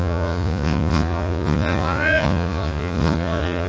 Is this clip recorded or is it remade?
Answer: remade